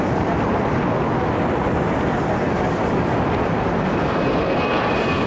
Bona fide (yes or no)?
yes